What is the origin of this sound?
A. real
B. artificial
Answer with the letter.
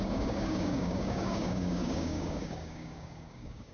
B